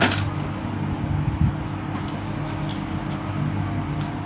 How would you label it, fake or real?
real